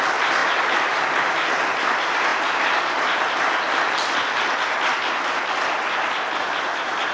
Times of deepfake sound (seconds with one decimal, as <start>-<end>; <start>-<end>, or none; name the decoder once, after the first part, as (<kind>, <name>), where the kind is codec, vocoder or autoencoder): none